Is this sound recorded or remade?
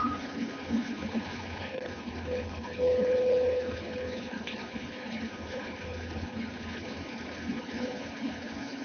remade